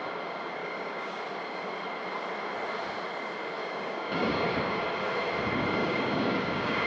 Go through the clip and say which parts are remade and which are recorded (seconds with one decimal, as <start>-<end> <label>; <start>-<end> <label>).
0.0-0.6 recorded; 0.6-1.2 remade; 1.2-3.6 recorded; 3.6-4.8 remade; 4.8-5.8 recorded; 5.8-6.9 remade